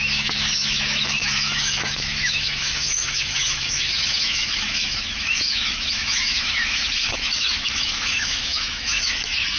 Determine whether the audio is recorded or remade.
remade